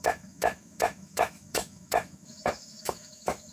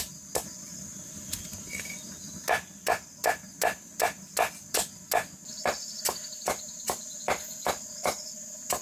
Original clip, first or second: second